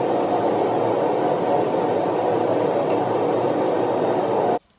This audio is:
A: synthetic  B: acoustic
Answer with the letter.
B